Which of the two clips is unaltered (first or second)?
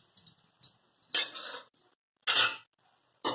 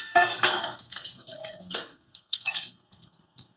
first